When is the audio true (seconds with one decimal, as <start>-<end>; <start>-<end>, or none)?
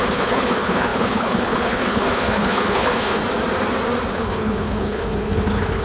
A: 3.2-4.1